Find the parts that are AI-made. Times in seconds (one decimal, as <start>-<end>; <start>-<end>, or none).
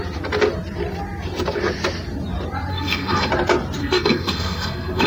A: 2.7-3.3; 3.8-5.1